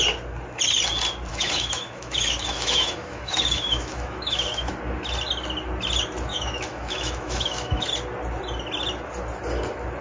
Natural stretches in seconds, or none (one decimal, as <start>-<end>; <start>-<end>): 0.0-1.3; 4.7-6.3; 7.9-10.0